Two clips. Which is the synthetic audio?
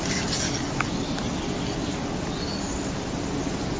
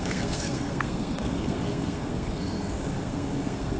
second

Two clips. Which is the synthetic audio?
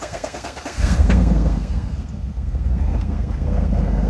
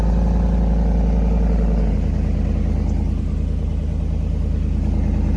first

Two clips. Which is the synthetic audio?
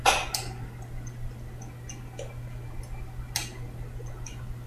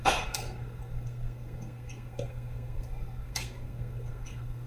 second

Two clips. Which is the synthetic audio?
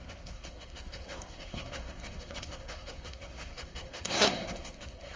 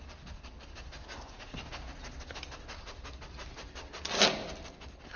first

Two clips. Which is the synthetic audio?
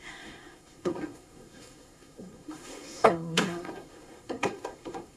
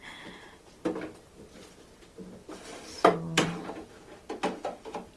first